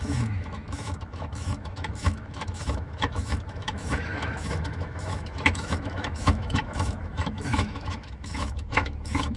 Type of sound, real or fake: fake